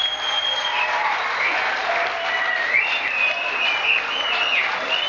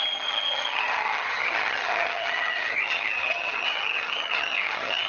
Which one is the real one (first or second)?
first